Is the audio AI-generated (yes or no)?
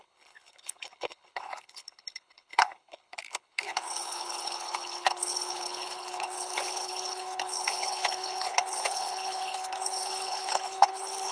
yes